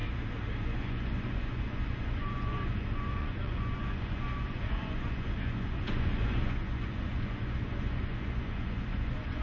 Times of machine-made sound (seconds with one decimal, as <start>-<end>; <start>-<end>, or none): 0.6-9.4